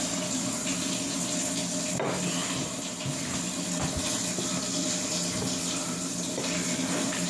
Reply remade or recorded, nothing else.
recorded